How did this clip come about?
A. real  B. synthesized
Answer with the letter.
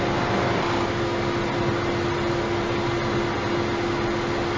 A